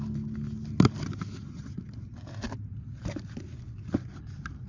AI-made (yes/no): no